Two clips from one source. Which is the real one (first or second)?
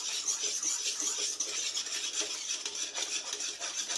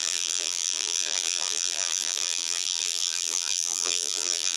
first